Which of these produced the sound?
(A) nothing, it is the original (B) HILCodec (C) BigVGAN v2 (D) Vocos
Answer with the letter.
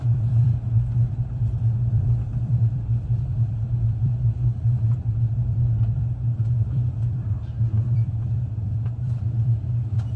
C